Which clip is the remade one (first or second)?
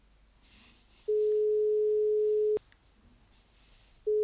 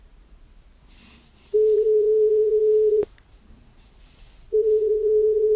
second